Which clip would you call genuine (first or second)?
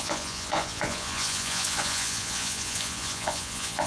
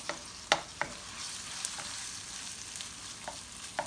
second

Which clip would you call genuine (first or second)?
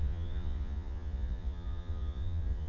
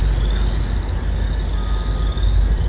second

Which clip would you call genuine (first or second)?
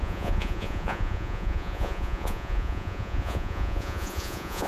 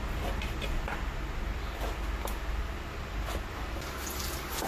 second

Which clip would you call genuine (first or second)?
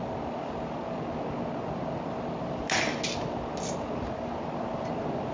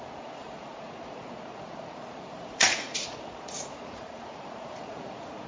first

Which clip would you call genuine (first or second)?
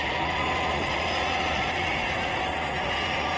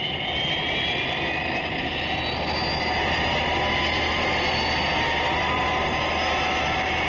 second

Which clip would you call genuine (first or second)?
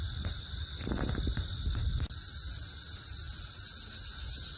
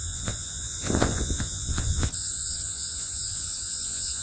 first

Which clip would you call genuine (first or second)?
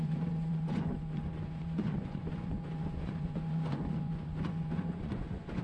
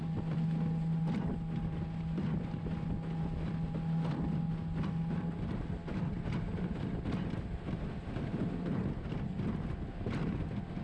second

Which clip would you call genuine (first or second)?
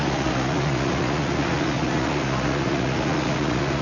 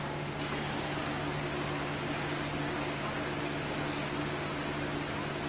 second